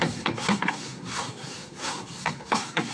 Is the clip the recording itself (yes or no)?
no